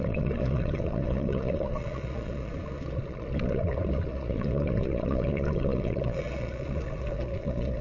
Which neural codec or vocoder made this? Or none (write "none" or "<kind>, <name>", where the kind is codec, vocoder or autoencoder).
vocoder, Vocos